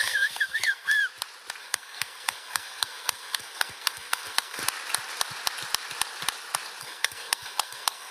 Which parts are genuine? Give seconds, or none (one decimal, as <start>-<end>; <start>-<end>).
1.0-1.6; 4.6-6.8